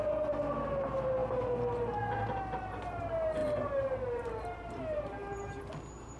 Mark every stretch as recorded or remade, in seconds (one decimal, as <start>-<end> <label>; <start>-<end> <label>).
0.0-3.4 recorded; 3.4-5.6 remade; 5.6-6.2 recorded